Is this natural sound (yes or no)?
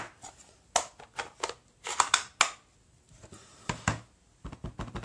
yes